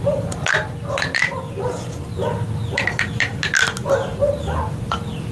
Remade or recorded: recorded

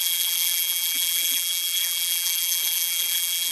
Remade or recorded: remade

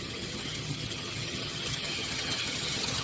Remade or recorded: remade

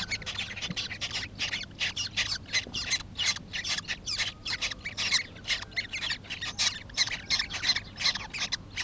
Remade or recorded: recorded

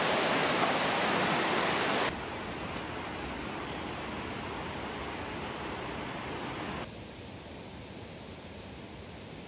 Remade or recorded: recorded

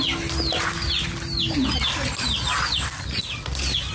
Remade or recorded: recorded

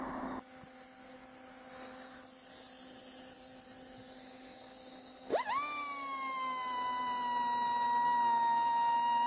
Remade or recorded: recorded